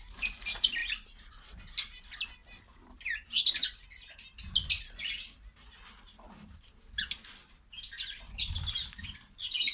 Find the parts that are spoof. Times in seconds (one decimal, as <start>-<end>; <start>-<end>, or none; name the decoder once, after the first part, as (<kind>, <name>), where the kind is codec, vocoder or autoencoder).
none